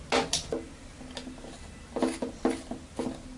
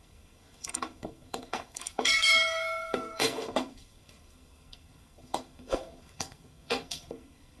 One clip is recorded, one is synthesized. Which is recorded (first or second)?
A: first